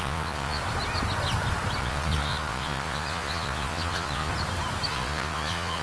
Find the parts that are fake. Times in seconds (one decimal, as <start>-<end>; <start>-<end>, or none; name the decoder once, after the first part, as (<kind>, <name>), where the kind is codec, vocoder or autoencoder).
0.0-0.6 (vocoder, Vocos); 1.8-4.3; 4.9-5.8